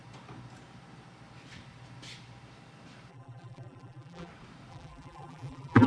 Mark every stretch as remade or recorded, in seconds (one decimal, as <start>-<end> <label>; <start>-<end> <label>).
0.0-3.1 recorded; 3.1-4.3 remade; 4.3-4.7 recorded; 4.7-5.9 remade